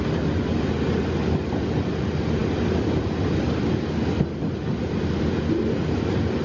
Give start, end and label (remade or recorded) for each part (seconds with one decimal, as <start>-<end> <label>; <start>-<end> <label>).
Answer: 0.0-6.4 recorded